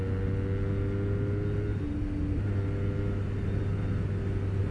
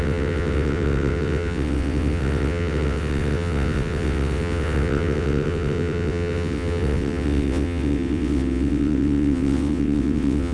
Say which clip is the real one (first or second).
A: first